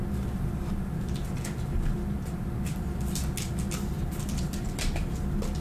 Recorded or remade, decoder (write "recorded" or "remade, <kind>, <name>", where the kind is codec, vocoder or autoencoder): recorded